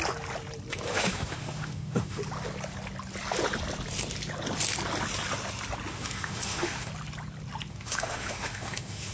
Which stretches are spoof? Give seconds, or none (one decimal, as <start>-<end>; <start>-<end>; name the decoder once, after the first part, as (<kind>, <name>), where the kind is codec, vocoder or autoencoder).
0.7-2.2 (autoencoder, DAC-VAE); 5.9-6.9; 7.7-9.1